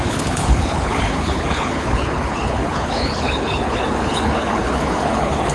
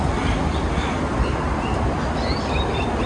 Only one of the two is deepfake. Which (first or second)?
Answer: first